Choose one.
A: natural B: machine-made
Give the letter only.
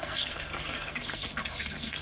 B